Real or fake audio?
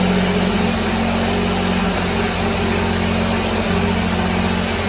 real